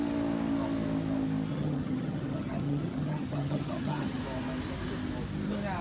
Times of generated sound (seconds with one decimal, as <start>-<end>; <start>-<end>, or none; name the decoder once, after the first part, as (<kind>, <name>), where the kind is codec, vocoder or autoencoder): 1.5-4.2 (vocoder, HiFi-GAN)